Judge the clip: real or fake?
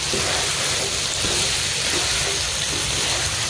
real